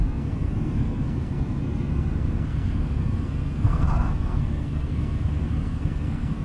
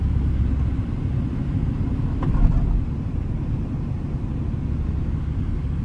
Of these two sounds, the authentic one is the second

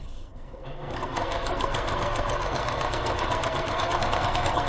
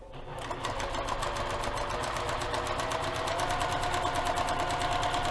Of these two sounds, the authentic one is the second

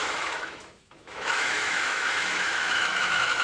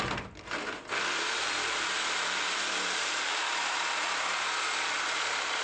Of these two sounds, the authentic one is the second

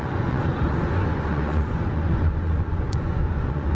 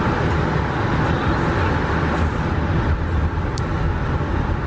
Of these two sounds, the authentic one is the second